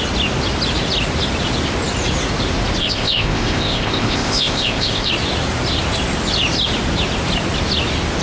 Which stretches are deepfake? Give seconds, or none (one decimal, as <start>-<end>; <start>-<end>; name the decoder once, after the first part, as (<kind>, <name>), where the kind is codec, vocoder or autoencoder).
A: 2.8-5.1 (codec, ZipCodec)